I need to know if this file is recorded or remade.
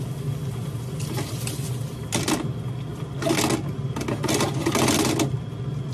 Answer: recorded